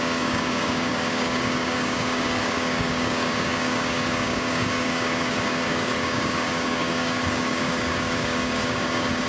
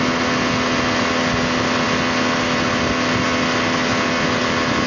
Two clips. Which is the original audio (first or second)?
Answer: second